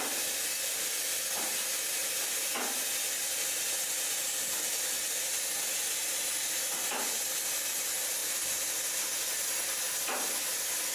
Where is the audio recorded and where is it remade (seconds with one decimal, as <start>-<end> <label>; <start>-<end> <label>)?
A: 0.0-2.0 recorded; 2.0-2.6 remade; 2.6-10.9 recorded

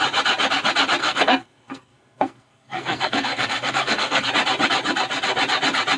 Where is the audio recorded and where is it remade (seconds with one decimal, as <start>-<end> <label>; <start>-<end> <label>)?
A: 0.0-1.0 recorded; 1.0-4.3 remade; 4.3-6.0 recorded

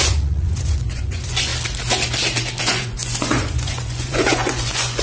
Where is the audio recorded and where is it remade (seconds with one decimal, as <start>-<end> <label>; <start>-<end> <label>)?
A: 0.0-1.5 remade; 1.5-2.6 recorded; 2.6-5.0 remade

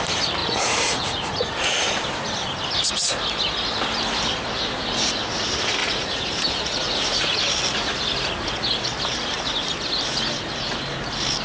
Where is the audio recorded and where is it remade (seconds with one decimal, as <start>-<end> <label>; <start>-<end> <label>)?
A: 0.0-0.4 recorded; 0.4-2.0 remade; 2.0-5.8 recorded; 5.8-7.4 remade; 7.4-11.4 recorded

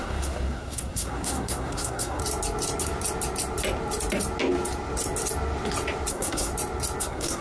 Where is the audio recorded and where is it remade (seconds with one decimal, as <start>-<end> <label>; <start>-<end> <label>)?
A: 0.0-2.2 remade; 2.2-6.1 recorded; 6.1-6.5 remade; 6.5-7.0 recorded; 7.0-7.4 remade

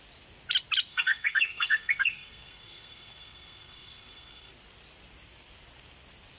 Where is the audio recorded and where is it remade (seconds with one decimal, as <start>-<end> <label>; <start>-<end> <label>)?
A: 0.0-0.9 recorded; 0.9-4.5 remade; 4.5-6.4 recorded

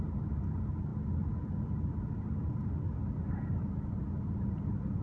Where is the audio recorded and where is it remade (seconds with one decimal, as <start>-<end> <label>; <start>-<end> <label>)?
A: 0.0-5.0 recorded